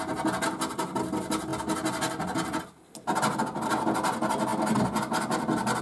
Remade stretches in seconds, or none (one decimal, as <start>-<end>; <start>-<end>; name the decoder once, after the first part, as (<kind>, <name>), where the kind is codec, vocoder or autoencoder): none